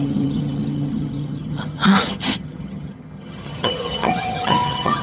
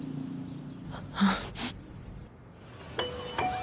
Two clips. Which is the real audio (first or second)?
second